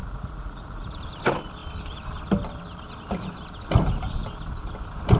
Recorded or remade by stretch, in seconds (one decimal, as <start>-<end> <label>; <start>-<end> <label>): 0.0-1.0 remade; 1.0-5.2 recorded

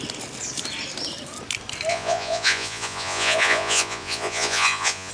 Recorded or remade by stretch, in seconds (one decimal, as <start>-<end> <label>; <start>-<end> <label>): 0.0-1.9 recorded; 1.9-5.1 remade

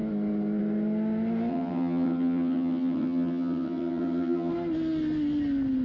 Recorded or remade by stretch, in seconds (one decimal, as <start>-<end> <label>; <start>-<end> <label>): 0.0-1.5 recorded; 1.5-4.5 remade; 4.5-5.8 recorded

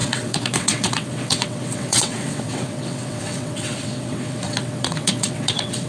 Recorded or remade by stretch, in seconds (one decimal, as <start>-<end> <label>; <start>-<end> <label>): 0.0-5.9 remade

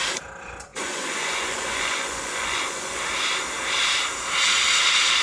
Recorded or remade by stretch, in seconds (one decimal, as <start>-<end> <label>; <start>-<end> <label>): 0.0-0.7 recorded; 0.7-3.0 remade; 3.0-5.2 recorded

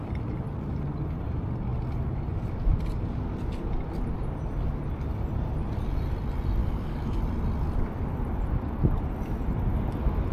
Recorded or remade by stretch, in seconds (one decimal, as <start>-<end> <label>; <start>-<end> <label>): 0.0-6.6 recorded; 6.6-7.2 remade; 7.2-10.3 recorded

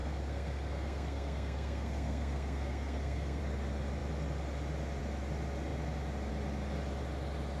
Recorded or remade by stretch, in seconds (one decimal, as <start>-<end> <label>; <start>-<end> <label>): 0.0-3.4 remade; 3.4-7.6 recorded